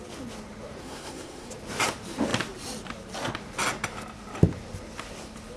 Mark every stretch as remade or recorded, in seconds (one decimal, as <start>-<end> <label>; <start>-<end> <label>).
0.0-0.8 recorded; 0.8-1.5 remade; 1.5-5.6 recorded